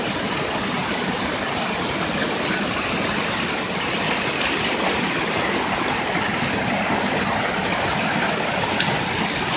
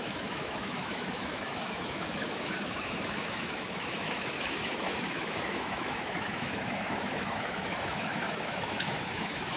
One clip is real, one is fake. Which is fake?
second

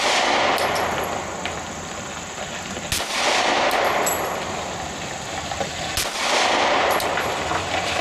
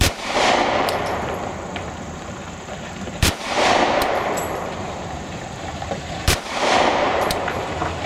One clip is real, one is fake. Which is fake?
second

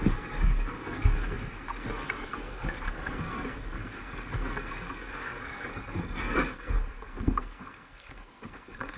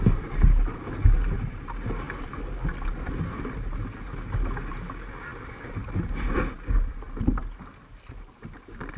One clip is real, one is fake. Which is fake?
first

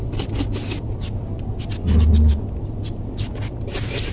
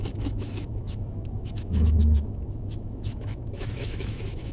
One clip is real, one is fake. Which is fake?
second